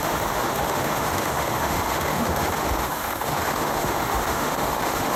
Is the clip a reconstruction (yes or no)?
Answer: yes